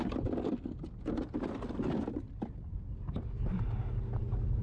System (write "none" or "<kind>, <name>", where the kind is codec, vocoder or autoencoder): none